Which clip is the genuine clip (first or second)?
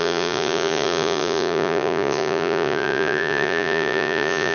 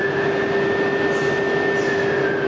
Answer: second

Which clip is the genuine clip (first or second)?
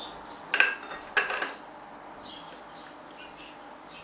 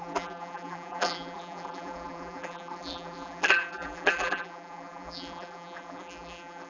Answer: first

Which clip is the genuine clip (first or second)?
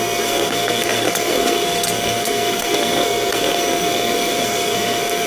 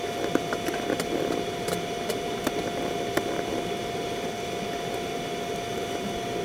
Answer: second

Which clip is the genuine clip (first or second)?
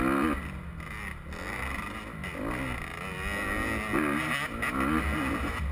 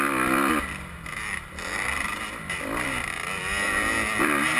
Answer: first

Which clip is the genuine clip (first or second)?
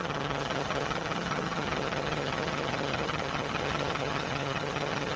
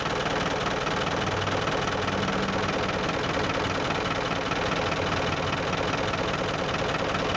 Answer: second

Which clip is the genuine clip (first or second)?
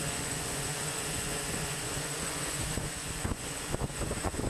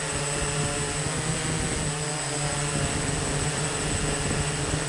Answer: second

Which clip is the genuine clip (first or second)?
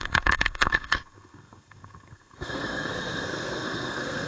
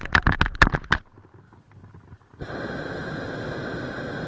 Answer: second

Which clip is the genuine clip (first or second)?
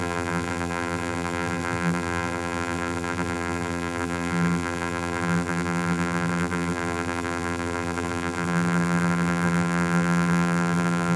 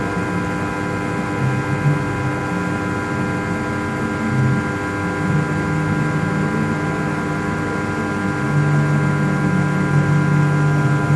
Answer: second